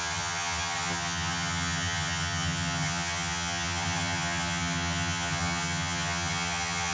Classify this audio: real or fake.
fake